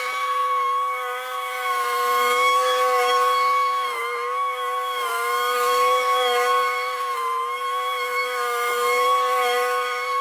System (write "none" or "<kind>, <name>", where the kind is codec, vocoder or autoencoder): autoencoder, DAC-VAE